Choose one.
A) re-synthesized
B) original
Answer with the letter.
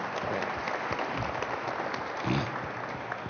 B